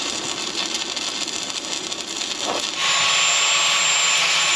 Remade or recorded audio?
recorded